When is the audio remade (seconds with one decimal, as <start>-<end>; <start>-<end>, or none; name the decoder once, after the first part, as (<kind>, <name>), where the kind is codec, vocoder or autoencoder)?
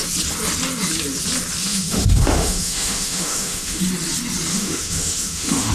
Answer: 1.6-3.8 (autoencoder, DAC-VAE); 4.5-5.7